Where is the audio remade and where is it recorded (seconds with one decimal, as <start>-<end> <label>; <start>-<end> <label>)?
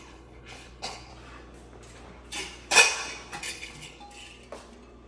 0.0-1.1 remade; 1.1-3.4 recorded; 3.4-4.0 remade; 4.0-5.1 recorded